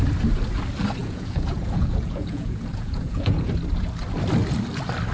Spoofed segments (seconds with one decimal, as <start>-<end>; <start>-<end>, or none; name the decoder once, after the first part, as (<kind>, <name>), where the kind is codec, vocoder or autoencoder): 1.0-3.5 (vocoder, Vocos)